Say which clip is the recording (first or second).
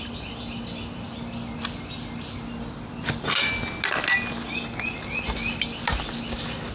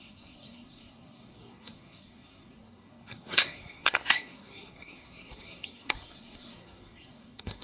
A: first